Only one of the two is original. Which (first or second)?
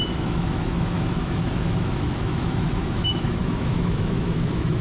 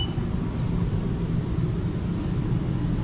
second